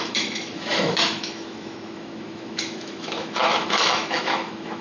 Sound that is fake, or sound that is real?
fake